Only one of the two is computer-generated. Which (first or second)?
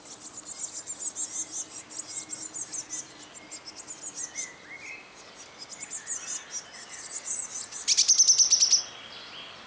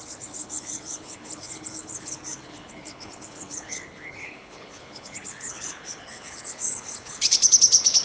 second